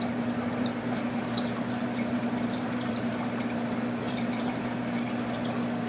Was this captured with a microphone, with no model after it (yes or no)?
no